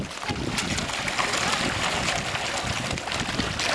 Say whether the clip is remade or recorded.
recorded